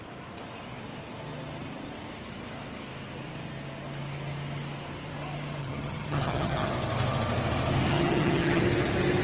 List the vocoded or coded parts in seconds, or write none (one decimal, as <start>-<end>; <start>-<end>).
5.6-6.7; 7.9-8.6